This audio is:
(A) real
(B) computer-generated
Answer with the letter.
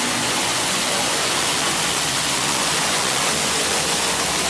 B